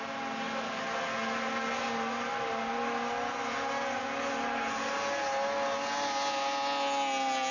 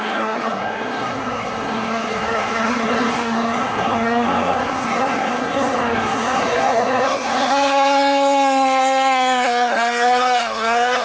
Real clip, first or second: first